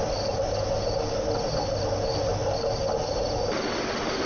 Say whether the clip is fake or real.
real